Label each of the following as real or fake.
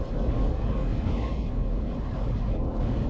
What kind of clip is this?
fake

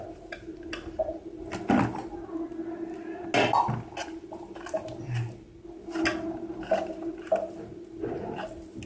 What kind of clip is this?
real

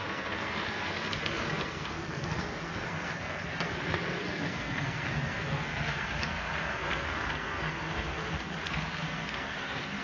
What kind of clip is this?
fake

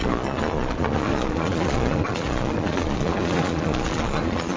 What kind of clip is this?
fake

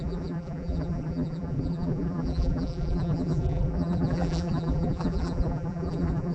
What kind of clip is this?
fake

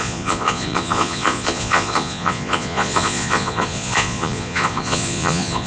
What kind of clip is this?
fake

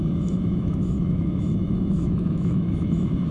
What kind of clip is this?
fake